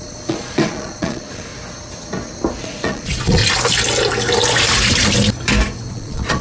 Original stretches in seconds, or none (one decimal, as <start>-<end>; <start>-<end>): 1.5-2.6; 3.4-5.9